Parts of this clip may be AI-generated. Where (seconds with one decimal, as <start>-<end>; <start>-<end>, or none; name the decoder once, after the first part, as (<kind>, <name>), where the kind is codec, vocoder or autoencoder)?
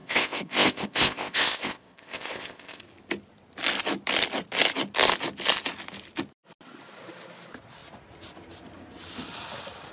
0.0-2.8 (codec, ZipCodec)